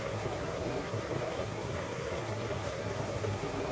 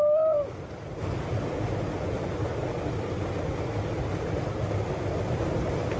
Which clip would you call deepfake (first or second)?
first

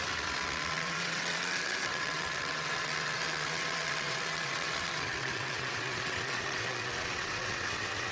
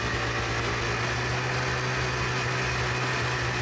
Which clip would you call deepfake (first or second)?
first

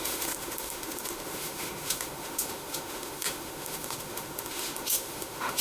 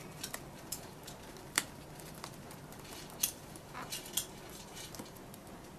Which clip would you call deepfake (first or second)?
first